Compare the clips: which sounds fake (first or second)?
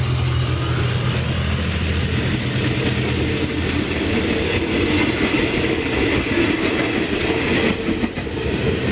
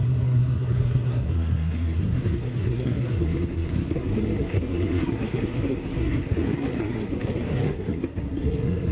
second